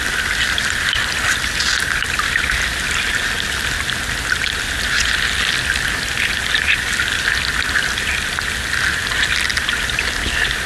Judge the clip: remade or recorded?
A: recorded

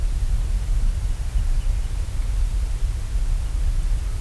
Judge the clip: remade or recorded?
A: recorded